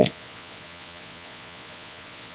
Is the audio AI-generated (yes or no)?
yes